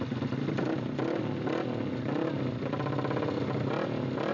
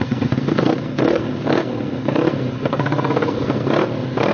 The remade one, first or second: second